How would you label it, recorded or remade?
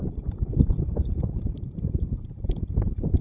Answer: recorded